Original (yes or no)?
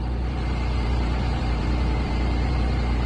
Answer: no